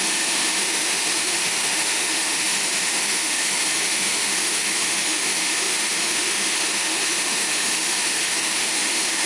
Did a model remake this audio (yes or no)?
yes